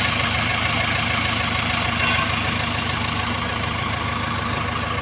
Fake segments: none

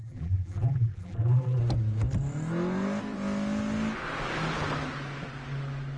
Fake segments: 0.0-1.6 (vocoder, BigVGAN v2)

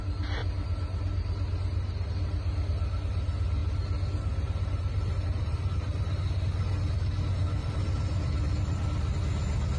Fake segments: 7.6-8.6 (vocoder, BigVGAN v2)

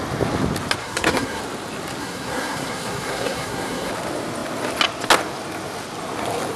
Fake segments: 0.8-1.4 (codec, SNAC); 2.0-3.9

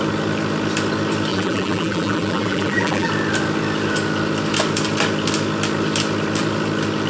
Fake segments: 1.3-3.1 (vocoder, BigVGAN v2)

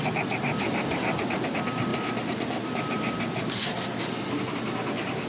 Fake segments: none

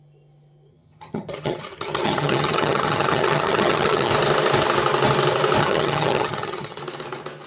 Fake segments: 0.7-4.1 (vocoder, HiFi-GAN); 5.6-6.8